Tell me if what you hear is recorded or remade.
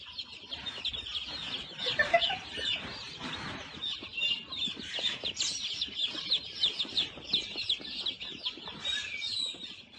recorded